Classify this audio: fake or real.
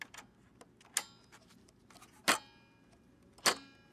real